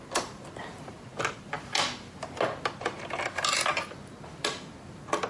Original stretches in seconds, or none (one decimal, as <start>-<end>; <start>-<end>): 0.0-5.3

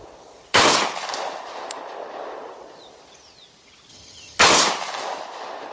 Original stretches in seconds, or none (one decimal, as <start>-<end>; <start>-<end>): 0.0-3.9; 4.4-5.7

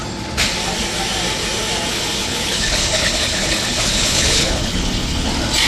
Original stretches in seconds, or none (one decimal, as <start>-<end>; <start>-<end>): 0.0-1.9; 5.3-5.7

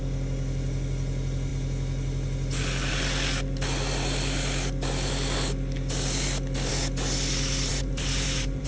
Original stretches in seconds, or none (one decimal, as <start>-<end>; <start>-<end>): 0.0-7.7

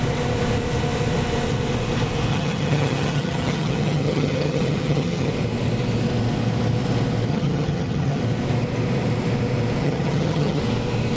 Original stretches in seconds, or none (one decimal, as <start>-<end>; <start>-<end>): 0.0-2.3; 5.3-7.3; 8.2-9.8; 10.6-11.2